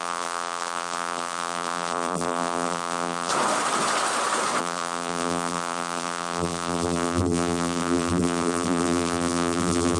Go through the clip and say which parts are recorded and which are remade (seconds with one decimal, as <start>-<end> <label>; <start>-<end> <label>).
0.0-3.3 remade; 3.3-4.6 recorded; 4.6-10.0 remade